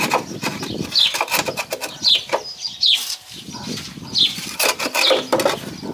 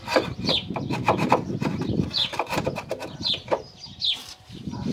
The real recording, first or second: first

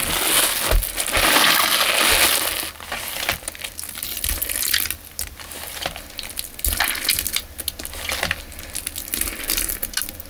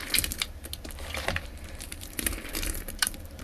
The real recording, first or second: first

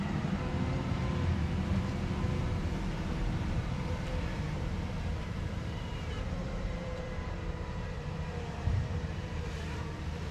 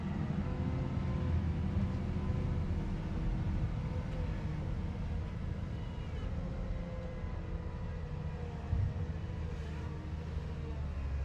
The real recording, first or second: second